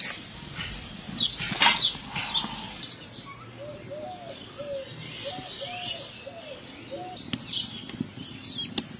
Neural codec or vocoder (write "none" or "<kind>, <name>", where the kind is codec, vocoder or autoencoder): none